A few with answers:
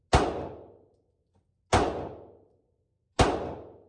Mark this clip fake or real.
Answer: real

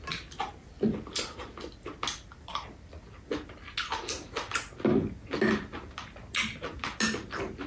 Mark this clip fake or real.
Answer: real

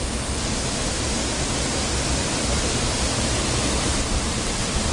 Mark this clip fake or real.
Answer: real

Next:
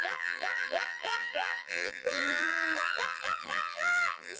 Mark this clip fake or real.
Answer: fake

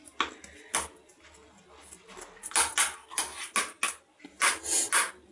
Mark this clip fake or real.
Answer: real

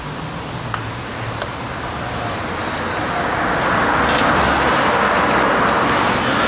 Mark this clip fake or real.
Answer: real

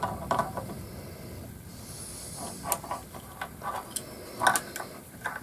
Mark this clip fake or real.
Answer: real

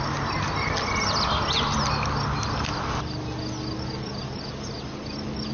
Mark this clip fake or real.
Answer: real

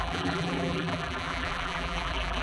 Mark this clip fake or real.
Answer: fake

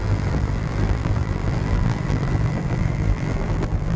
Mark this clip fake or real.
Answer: fake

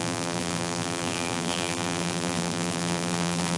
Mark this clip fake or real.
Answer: fake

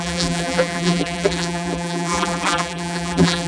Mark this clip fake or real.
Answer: fake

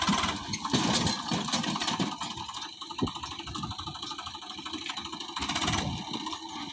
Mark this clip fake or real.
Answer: real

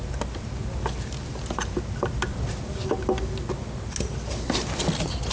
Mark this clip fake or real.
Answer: real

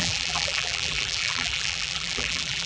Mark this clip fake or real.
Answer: fake